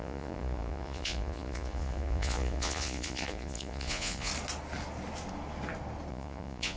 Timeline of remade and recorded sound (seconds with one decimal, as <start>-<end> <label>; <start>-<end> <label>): 0.0-4.3 remade; 4.3-6.1 recorded; 6.1-6.8 remade